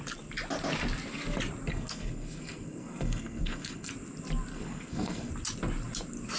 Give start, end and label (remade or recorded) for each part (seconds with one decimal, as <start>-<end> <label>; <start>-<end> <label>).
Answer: 0.0-1.7 recorded; 1.7-3.9 remade; 3.9-4.5 recorded; 4.5-5.3 remade; 5.3-6.4 recorded